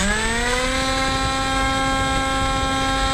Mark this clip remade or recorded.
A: recorded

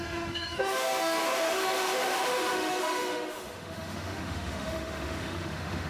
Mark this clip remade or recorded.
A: remade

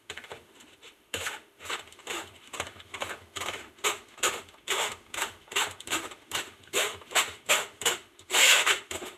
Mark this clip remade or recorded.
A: remade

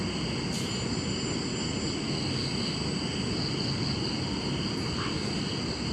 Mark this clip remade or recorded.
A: recorded